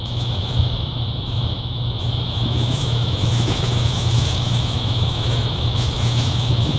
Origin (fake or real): fake